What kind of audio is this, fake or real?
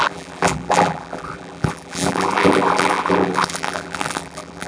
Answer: fake